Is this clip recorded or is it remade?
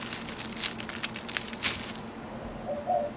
recorded